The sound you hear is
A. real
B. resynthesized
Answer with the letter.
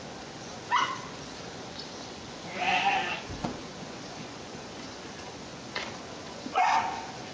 B